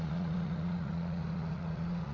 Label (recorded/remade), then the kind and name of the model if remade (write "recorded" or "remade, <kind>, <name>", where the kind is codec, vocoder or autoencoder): remade, vocoder, Vocos